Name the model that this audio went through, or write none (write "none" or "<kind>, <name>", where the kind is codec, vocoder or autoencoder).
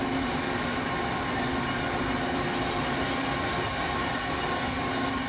none